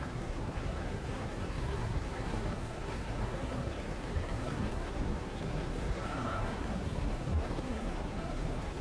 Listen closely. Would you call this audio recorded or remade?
remade